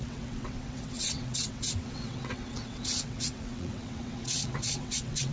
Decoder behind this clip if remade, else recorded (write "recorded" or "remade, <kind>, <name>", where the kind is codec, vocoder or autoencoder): remade, vocoder, WaveNeXt